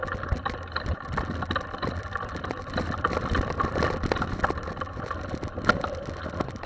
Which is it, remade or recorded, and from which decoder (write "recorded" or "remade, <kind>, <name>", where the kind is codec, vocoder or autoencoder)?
recorded